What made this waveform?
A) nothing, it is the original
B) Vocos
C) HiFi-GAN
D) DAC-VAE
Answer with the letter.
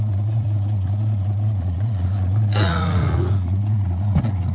B